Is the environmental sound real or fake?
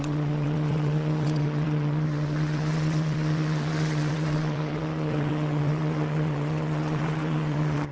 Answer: fake